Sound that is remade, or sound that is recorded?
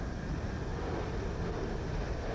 recorded